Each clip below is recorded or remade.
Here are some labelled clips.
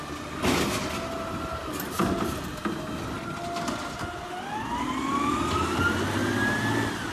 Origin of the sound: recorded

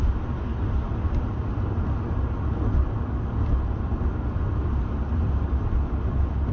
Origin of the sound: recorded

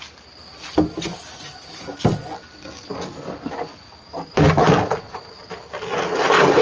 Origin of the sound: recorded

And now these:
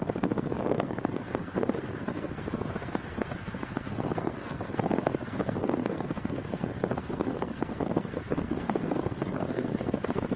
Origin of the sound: remade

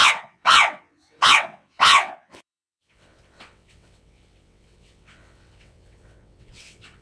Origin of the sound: remade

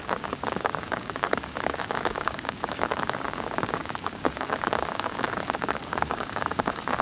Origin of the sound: remade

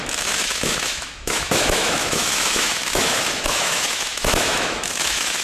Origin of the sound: remade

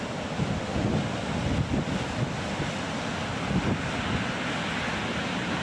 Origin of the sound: recorded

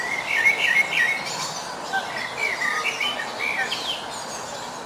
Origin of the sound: recorded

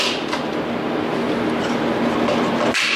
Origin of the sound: recorded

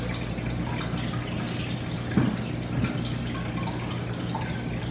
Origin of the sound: recorded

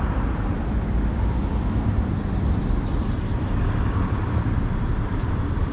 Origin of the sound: remade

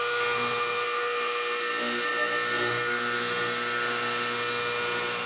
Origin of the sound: remade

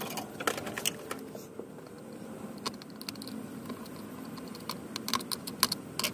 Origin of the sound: recorded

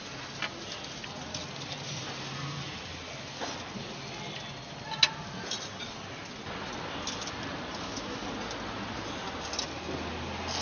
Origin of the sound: recorded